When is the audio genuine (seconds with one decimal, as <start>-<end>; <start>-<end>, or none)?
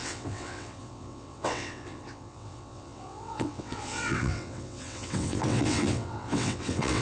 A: none